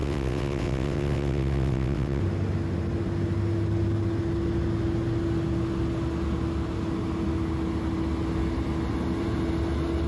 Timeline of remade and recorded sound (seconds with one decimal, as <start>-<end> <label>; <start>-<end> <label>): 0.0-2.2 remade; 2.2-10.1 recorded